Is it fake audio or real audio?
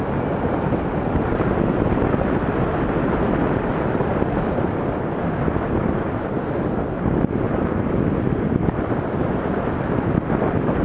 real